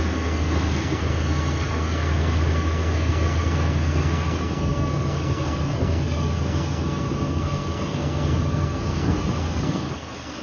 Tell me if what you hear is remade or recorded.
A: remade